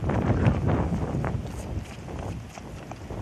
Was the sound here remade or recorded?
recorded